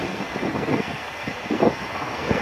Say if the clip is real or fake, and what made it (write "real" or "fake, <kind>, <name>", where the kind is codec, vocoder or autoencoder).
fake, codec, SNAC